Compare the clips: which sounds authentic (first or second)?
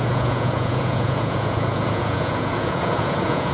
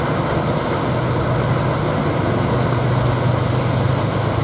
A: second